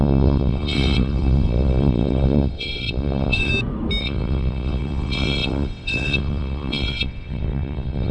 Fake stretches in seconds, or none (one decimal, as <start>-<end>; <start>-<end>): 0.0-3.5; 4.0-8.1